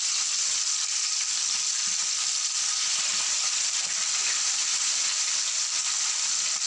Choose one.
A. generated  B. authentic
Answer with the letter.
B